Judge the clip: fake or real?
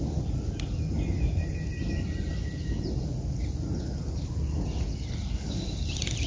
real